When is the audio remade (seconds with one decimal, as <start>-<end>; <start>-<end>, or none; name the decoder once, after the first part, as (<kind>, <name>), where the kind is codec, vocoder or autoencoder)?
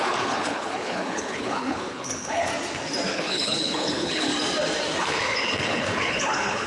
0.0-2.5 (codec, HILCodec); 3.1-4.3; 5.0-6.7